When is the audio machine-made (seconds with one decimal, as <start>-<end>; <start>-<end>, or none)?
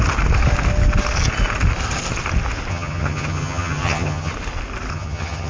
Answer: 2.7-4.3; 4.9-5.5